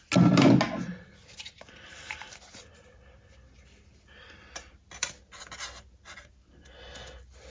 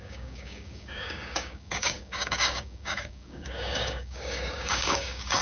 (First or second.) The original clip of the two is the first